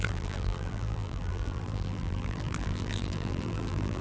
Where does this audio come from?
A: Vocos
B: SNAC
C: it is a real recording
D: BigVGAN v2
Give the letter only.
D